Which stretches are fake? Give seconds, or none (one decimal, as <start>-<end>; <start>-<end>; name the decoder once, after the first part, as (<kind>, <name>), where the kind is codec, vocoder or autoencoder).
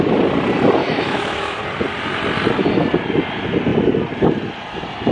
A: 0.8-1.6 (autoencoder, DAC-VAE)